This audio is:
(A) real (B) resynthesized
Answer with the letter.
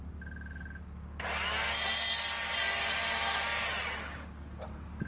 A